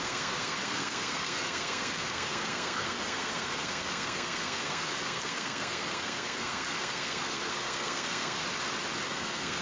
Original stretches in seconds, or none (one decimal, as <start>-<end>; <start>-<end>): 8.4-9.1